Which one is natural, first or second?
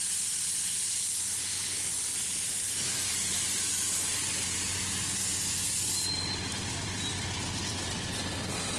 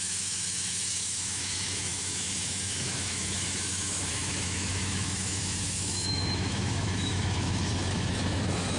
first